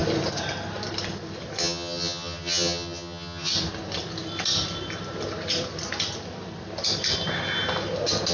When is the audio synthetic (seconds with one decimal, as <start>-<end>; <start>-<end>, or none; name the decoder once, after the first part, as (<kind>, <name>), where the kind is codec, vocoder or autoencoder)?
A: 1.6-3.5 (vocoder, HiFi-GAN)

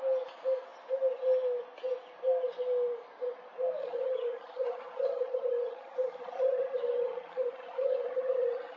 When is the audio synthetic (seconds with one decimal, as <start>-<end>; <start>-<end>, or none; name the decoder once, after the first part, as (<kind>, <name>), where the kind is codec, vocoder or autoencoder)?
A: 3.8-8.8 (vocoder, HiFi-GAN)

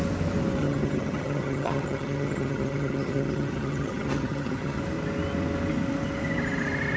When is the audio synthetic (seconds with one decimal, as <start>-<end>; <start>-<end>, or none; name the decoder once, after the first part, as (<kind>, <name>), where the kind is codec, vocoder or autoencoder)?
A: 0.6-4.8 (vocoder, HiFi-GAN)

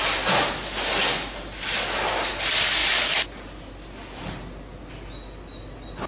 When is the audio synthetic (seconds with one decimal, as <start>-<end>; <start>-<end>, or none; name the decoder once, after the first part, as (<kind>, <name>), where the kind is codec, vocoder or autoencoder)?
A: none

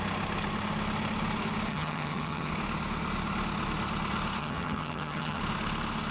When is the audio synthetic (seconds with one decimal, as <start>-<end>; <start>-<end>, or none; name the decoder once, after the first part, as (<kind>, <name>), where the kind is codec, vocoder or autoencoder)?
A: 1.7-2.5 (vocoder, HiFi-GAN); 4.4-5.4

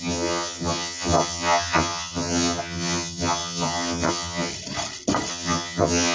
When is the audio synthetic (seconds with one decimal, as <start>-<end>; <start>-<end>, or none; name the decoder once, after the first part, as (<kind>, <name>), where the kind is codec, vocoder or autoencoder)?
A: 0.0-4.5 (vocoder, HiFi-GAN); 5.3-6.1